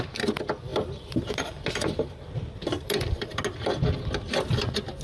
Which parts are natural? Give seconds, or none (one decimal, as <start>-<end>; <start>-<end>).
0.0-0.7; 3.4-5.0